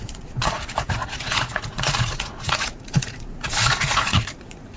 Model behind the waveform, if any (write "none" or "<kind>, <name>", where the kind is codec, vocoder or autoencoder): vocoder, Vocos